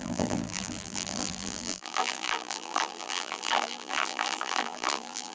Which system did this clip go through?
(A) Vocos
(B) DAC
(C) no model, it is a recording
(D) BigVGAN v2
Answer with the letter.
D